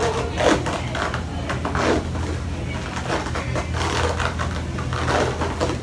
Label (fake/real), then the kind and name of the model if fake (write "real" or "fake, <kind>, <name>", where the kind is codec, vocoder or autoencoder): real